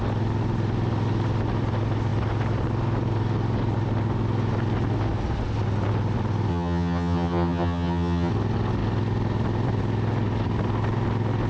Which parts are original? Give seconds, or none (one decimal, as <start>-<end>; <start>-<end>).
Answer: 0.0-6.5; 8.3-11.5